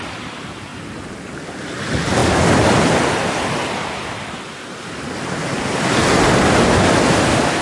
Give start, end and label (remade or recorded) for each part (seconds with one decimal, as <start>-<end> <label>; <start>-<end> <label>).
0.0-7.6 recorded